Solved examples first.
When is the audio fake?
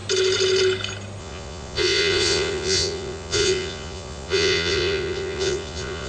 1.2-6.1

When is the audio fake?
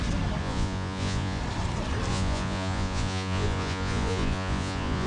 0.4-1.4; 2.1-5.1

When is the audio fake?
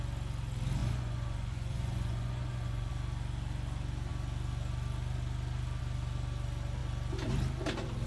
0.8-2.9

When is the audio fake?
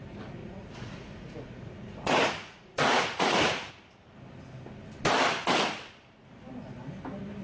0.4-3.7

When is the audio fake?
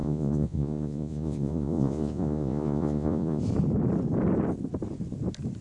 0.0-3.4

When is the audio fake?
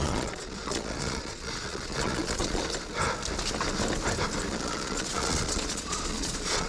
0.0-2.6; 4.5-6.7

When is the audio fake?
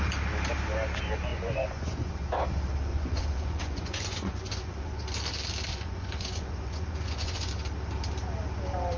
1.3-2.2; 2.9-5.0; 5.7-7.5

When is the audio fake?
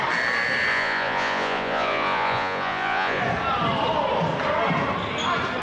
0.7-3.2